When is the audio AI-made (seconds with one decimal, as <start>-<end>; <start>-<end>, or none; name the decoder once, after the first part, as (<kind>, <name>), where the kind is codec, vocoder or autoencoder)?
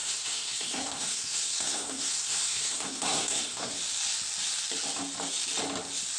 0.0-3.7 (codec, SNAC)